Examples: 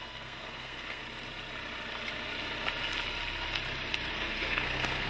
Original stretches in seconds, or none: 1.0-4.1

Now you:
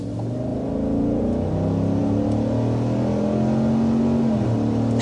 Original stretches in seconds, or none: 0.0-5.0